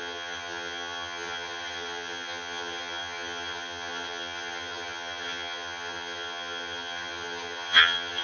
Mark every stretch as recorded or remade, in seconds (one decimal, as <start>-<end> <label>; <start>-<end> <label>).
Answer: 0.0-8.2 remade